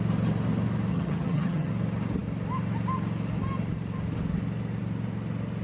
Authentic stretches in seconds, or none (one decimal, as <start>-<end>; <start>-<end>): 0.0-0.9; 1.7-5.6